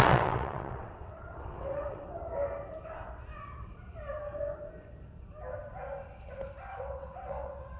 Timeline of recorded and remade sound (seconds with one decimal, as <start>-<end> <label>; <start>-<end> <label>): 0.0-2.3 remade; 2.3-6.8 recorded; 6.8-7.8 remade